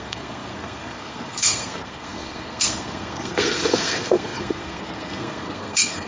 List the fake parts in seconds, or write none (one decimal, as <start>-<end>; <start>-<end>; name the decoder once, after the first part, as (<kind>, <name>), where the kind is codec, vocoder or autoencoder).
0.0-6.1 (codec, SNAC)